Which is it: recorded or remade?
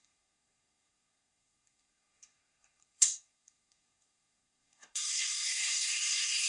remade